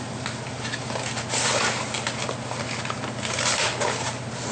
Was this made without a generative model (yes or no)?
yes